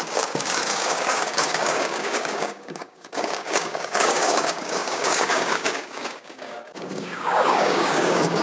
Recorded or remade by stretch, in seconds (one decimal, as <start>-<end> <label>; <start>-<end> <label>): 0.0-8.4 remade